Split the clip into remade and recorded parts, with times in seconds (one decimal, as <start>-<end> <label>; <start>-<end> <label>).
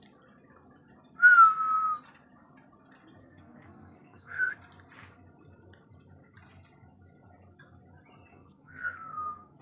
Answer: 0.0-3.2 recorded; 3.2-4.5 remade; 4.5-8.3 recorded; 8.3-9.6 remade